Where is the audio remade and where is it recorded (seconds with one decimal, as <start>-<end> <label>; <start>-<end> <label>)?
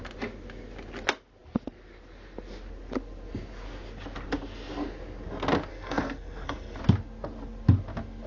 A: 0.0-5.7 recorded; 5.7-6.8 remade; 6.8-8.3 recorded